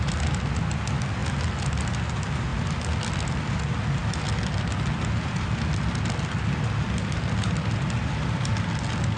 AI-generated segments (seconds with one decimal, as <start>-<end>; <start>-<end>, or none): 2.5-3.5